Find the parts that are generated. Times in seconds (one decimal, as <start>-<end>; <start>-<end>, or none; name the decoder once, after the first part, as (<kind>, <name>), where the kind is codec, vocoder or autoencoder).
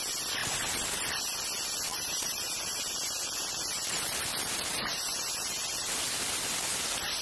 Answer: 1.9-6.2 (vocoder, BigVGAN v2)